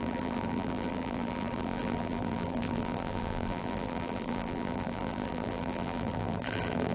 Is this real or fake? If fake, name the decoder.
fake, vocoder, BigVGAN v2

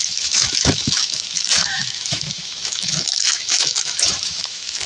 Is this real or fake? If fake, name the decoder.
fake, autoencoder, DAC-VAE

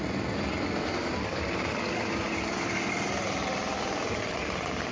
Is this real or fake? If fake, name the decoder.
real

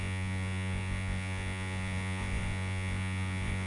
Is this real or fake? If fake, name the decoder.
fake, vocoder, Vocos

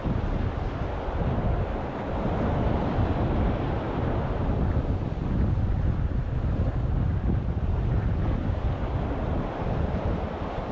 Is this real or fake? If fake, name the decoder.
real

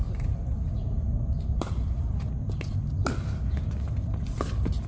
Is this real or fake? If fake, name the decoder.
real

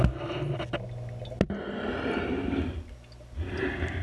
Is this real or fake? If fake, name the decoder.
real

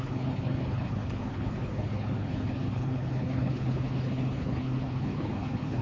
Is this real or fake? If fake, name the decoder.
fake, codec, HILCodec